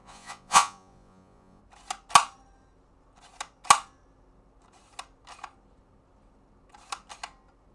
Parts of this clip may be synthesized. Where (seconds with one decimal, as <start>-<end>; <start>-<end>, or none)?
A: 0.0-1.6